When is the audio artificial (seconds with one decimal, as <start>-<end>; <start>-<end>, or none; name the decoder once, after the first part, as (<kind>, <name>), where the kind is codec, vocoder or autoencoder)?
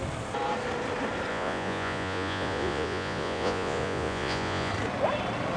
1.3-4.7 (vocoder, Vocos)